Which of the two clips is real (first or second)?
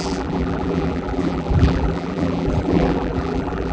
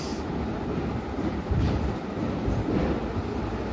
second